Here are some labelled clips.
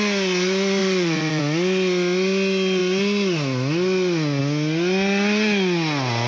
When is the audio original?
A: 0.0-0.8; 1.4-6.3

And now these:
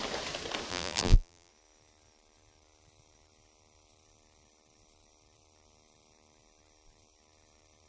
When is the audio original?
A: 0.0-0.7; 1.5-7.9

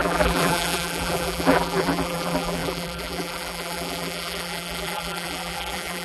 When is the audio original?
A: none

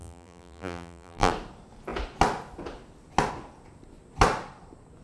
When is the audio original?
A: 1.3-5.0

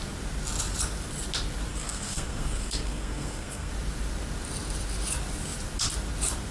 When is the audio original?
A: 0.0-1.7; 3.7-6.5

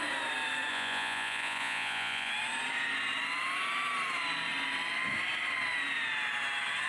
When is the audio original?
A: 0.0-0.7; 2.3-6.9